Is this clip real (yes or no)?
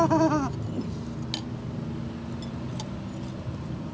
yes